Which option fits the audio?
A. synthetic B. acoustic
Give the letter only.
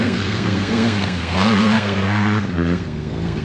A